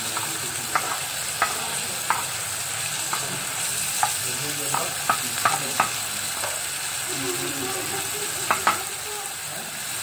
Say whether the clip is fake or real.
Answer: real